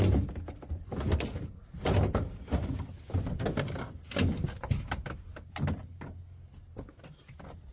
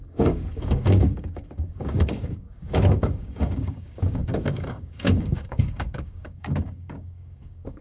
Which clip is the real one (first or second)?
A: first